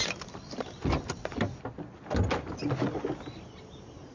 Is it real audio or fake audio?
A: real